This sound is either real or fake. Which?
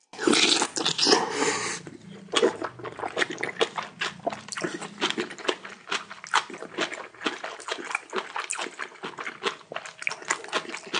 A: real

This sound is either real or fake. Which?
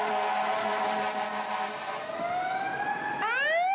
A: real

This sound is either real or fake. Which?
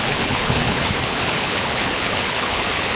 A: fake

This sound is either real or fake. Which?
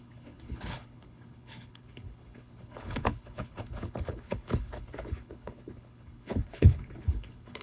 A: fake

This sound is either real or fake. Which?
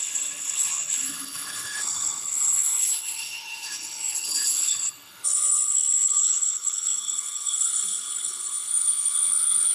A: fake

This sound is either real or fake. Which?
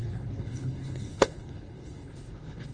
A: fake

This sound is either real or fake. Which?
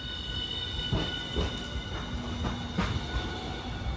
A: real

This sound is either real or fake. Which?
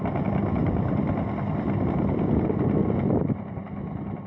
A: real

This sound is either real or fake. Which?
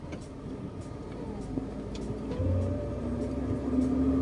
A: real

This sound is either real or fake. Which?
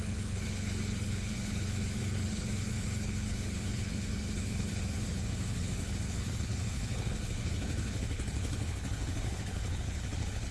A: fake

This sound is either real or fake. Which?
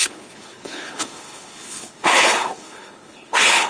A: fake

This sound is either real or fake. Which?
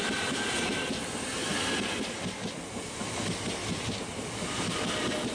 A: real